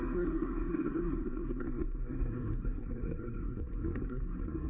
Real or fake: fake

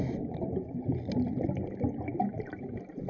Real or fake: real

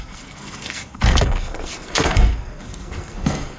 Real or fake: fake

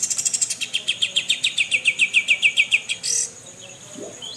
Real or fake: real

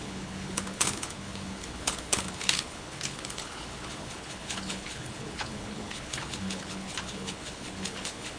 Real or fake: fake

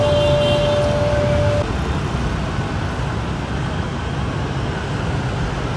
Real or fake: real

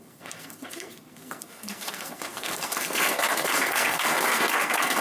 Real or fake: fake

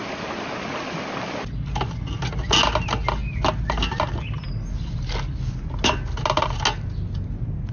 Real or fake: real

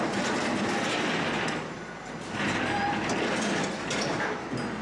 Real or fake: real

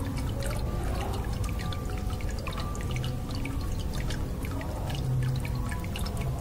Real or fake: real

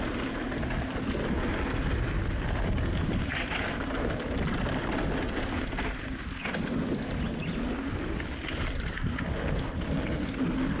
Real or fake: real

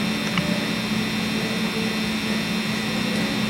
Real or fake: real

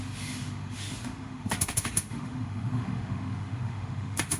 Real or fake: fake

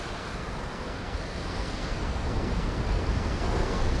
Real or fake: fake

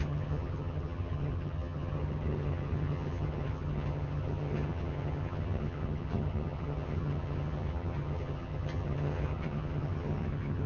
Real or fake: fake